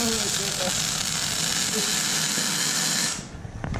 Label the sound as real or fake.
real